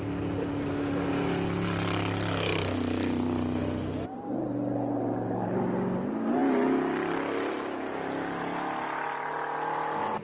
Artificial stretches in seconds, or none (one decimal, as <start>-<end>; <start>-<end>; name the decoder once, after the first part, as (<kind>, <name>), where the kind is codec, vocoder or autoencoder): none